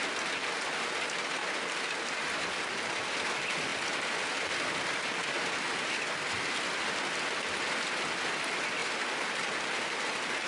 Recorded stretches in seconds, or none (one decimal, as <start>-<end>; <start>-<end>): 0.0-10.5